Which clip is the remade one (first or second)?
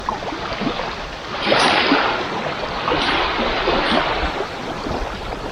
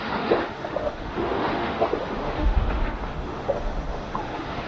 second